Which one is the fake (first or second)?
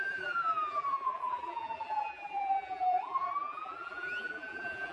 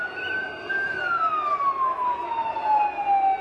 first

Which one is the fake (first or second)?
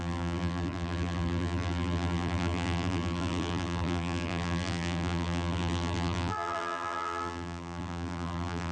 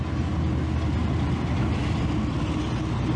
first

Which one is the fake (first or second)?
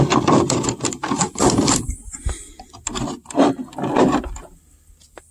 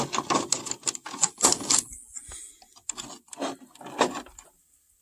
first